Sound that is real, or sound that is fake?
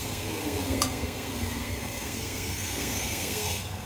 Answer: fake